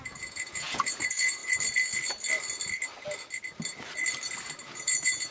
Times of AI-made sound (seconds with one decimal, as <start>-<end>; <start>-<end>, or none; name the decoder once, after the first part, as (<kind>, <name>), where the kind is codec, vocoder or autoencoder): 0.0-1.4 (vocoder, Vocos); 4.6-5.3